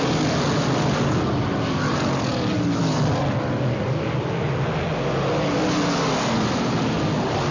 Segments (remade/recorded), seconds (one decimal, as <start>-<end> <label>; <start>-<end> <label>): 0.0-7.5 recorded